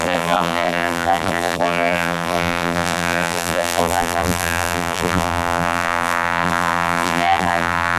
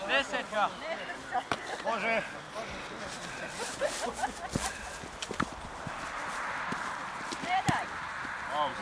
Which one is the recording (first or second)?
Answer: second